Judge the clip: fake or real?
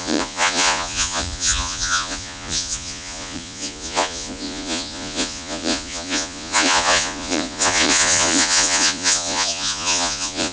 fake